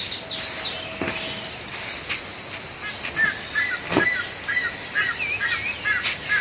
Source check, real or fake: real